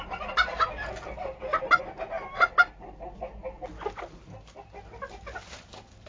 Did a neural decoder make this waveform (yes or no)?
no